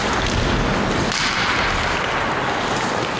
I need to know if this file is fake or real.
real